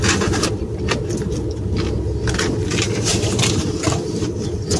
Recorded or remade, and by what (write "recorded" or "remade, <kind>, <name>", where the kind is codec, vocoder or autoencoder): recorded